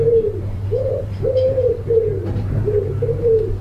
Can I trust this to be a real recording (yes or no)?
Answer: no